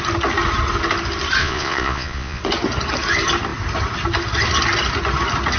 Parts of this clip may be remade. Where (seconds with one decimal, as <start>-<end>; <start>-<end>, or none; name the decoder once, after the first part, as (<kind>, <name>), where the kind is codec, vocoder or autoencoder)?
1.4-2.4 (vocoder, Vocos)